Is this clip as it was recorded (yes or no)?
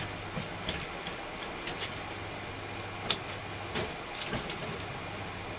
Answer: yes